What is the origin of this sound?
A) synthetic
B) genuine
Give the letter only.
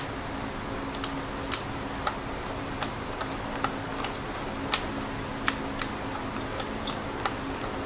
B